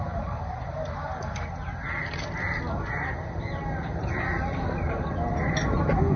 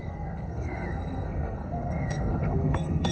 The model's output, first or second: second